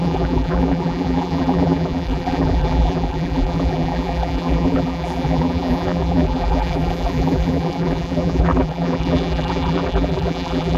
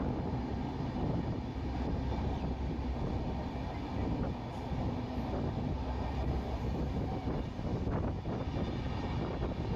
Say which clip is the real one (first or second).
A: second